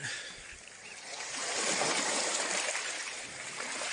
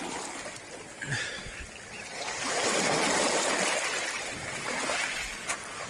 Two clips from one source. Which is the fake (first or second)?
first